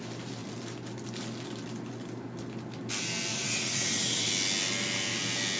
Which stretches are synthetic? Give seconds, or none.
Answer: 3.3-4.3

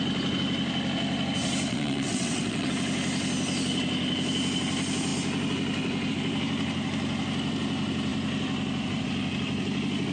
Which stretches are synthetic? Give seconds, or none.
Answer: 1.7-2.7

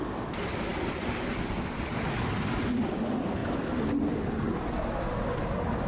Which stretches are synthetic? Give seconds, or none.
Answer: none

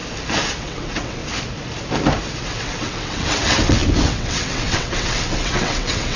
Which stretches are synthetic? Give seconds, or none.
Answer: 0.6-1.2; 2.4-6.2